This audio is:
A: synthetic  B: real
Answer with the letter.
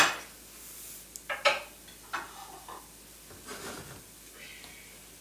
B